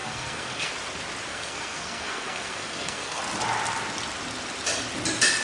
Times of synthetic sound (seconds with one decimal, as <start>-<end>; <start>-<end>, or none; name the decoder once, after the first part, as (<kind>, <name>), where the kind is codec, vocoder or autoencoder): 0.0-0.7 (codec, SNAC); 1.3-3.2